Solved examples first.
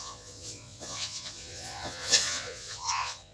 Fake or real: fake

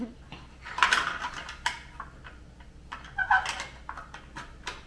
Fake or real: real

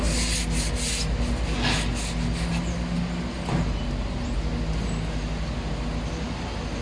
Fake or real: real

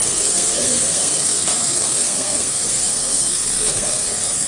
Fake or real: fake